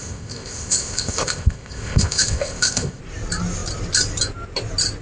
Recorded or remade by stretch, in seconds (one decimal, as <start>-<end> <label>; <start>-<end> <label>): 0.0-3.0 remade; 3.0-5.0 recorded